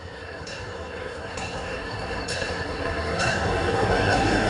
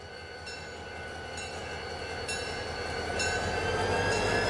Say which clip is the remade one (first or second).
first